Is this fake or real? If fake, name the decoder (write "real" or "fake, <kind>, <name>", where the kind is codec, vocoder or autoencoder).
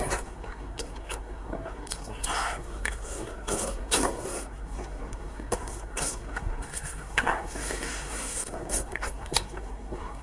fake, codec, SNAC